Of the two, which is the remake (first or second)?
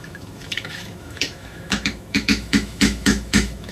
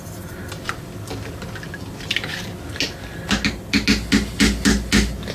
first